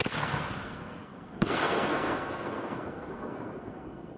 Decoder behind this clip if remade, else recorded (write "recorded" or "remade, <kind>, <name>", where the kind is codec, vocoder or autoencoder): remade, codec, SNAC